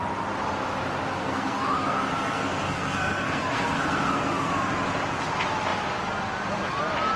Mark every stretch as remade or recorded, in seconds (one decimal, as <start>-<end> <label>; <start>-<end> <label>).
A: 0.0-1.2 recorded; 1.2-4.5 remade; 4.5-7.2 recorded